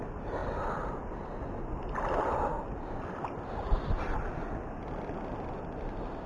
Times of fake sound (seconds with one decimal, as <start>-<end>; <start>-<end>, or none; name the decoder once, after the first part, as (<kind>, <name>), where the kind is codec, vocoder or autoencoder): none